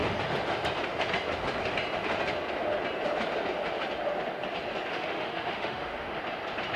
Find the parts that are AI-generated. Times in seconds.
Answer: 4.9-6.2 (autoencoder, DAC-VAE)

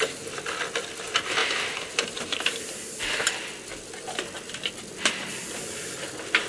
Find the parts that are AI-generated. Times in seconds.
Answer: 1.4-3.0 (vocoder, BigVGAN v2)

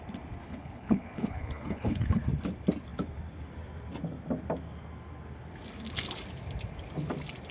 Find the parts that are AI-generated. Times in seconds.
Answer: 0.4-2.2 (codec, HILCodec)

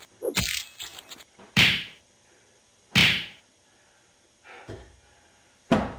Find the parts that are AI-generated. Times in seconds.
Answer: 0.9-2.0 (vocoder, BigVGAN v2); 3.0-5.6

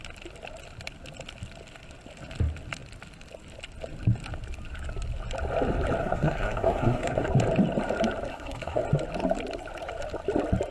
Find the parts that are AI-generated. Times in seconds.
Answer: 6.0-7.3 (codec, SNAC); 8.3-8.8

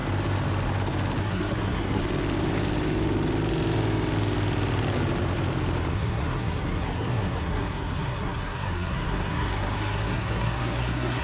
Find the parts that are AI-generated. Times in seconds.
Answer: 1.2-2.0 (codec, SNAC); 5.9-11.2